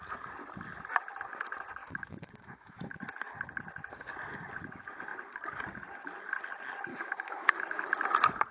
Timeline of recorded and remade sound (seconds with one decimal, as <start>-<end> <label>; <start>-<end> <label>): 0.0-1.8 recorded; 1.8-3.0 remade; 3.0-6.9 recorded; 6.9-7.9 remade; 7.9-8.5 recorded